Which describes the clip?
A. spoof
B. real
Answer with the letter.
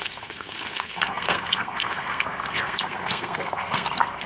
A